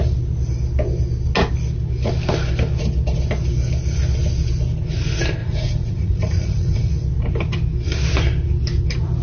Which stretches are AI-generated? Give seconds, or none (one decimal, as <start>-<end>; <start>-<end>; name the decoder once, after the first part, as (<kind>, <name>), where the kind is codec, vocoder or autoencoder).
5.4-6.9 (vocoder, Vocos)